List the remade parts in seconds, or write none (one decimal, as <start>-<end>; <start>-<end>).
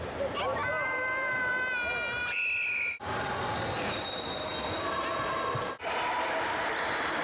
none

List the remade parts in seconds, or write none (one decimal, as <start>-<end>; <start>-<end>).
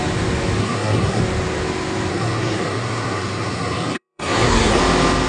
0.6-1.2; 2.1-4.8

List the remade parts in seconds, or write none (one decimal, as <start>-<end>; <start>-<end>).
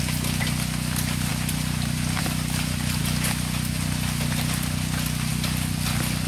none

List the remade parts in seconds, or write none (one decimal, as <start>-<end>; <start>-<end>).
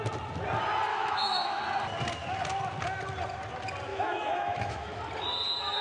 0.9-1.6; 3.9-5.0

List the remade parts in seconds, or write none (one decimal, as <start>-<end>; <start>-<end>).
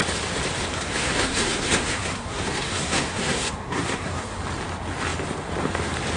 0.7-4.4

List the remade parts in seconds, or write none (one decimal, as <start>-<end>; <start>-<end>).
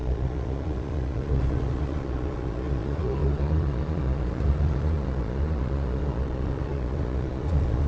0.0-7.9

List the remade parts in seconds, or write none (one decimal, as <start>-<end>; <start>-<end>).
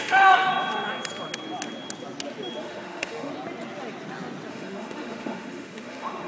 0.0-0.5; 2.6-3.3; 4.5-6.3